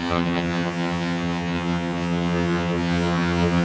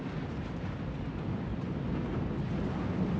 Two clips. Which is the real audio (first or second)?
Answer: second